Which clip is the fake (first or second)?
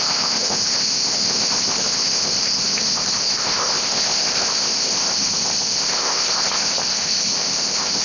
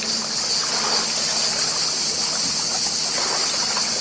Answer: first